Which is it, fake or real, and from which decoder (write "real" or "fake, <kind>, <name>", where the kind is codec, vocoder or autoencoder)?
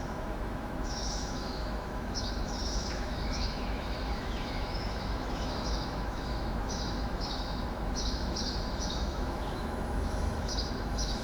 fake, autoencoder, DAC-VAE